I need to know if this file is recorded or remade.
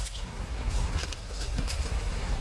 remade